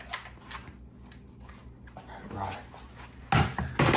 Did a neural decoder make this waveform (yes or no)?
no